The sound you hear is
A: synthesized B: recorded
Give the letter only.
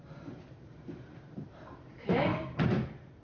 A